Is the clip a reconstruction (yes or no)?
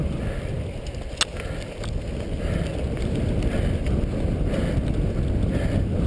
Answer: no